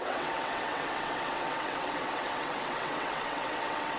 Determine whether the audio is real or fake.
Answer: fake